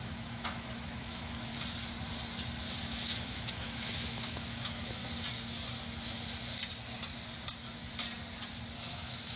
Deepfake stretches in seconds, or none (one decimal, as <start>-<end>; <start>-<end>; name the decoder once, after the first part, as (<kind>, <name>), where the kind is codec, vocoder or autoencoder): 0.0-1.5 (autoencoder, DAC-VAE); 2.8-5.0; 8.9-9.4